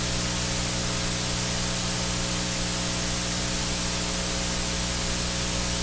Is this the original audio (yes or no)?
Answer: yes